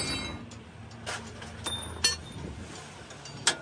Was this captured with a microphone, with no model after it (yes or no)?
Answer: yes